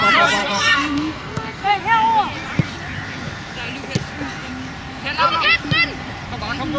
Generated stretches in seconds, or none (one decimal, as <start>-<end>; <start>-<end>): 0.4-1.8